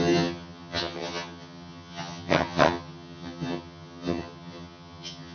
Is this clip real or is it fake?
fake